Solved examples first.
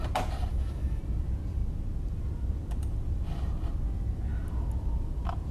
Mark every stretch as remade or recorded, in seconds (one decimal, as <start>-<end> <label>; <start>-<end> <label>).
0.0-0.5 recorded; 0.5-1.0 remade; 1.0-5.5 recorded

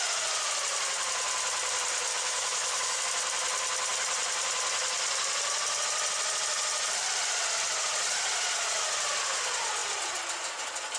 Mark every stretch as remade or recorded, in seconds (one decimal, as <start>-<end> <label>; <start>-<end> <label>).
0.0-2.1 recorded; 2.1-3.0 remade; 3.0-11.0 recorded

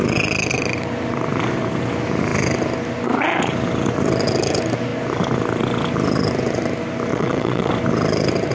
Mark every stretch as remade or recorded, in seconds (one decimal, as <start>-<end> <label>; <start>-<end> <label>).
0.0-7.1 recorded; 7.1-7.7 remade; 7.7-8.5 recorded